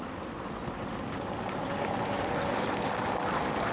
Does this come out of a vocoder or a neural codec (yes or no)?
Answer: no